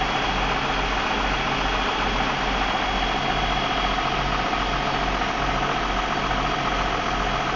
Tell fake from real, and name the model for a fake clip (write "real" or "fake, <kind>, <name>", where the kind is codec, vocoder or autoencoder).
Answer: real